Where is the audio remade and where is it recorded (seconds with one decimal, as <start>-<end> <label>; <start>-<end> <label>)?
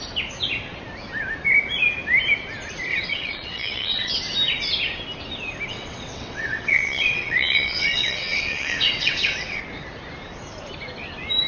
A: 0.0-2.9 recorded; 2.9-4.1 remade; 4.1-5.7 recorded; 5.7-9.6 remade; 9.6-11.5 recorded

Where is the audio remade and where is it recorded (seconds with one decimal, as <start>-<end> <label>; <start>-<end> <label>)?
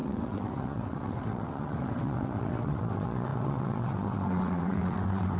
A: 0.0-5.4 remade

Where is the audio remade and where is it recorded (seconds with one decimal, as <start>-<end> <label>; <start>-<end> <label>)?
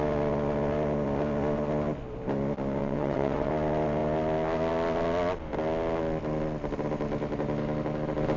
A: 0.0-2.8 recorded; 2.8-3.5 remade; 3.5-8.4 recorded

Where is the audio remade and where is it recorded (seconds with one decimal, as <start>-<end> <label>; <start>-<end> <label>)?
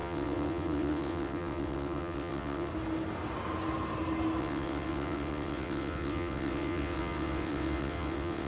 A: 0.0-2.7 remade; 2.7-4.4 recorded; 4.4-8.5 remade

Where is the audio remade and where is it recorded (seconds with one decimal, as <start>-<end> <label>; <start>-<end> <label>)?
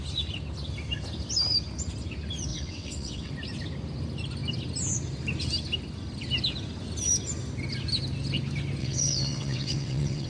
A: 0.0-2.5 recorded; 2.5-3.3 remade; 3.3-8.8 recorded; 8.8-10.3 remade